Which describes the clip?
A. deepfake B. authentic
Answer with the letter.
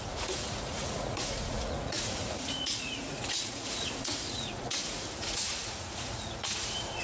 A